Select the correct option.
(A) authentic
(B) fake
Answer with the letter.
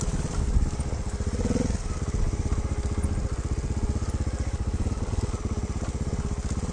A